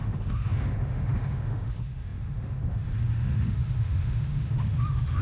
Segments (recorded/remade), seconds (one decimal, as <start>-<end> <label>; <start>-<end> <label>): 0.0-5.2 remade